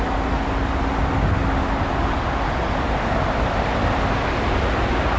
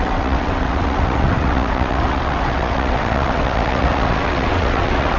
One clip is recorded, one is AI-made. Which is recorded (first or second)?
first